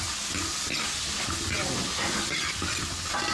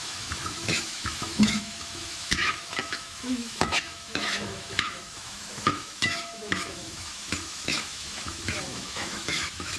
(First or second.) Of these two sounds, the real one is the first